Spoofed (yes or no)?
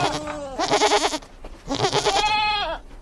no